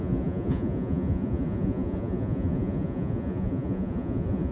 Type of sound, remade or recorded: remade